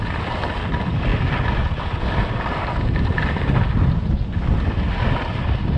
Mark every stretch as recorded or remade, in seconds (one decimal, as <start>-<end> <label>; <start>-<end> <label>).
0.0-5.8 recorded